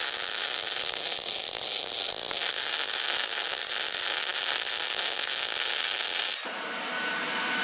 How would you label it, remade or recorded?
recorded